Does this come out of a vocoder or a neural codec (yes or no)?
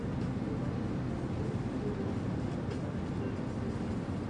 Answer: no